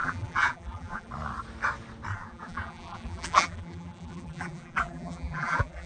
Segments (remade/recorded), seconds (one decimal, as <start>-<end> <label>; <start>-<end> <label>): 0.0-1.1 remade; 1.1-2.1 recorded; 2.1-5.9 remade